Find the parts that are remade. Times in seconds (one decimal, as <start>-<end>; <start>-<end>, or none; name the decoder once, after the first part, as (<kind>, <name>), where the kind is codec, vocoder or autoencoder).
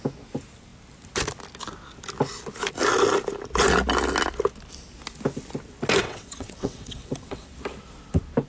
6.0-7.5 (vocoder, WaveNeXt)